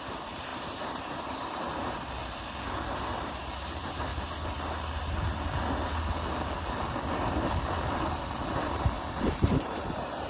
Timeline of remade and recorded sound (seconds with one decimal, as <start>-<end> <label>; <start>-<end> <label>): 0.0-2.2 remade; 2.2-2.9 recorded; 2.9-4.1 remade; 4.1-9.2 recorded; 9.2-10.3 remade